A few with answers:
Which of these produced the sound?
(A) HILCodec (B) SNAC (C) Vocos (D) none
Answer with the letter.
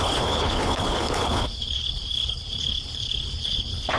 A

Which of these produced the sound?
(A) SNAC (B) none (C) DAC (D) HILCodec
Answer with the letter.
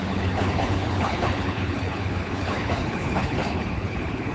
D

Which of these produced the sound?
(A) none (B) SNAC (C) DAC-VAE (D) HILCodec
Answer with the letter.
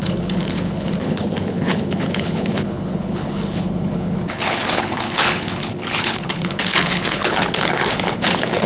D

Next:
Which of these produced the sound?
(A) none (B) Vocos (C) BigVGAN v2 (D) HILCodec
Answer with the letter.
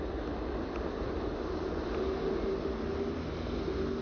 A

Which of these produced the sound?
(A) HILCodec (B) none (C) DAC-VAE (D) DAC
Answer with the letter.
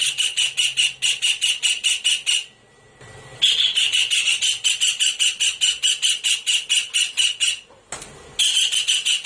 B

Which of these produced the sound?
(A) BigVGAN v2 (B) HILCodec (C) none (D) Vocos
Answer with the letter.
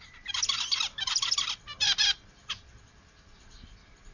C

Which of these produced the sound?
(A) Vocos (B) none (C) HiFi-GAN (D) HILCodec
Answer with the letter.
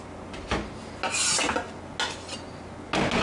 B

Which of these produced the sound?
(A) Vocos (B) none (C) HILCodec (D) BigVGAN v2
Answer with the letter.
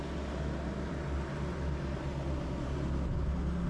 B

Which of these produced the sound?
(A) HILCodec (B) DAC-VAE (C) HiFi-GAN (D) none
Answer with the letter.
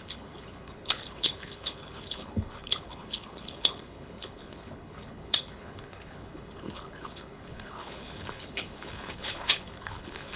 A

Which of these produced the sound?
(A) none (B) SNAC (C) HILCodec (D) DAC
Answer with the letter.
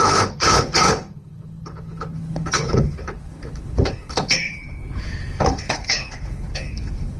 C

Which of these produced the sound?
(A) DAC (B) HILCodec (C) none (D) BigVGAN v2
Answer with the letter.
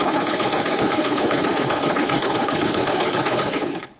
B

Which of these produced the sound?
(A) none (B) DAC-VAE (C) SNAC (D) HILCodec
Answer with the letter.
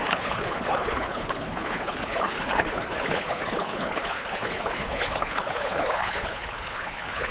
D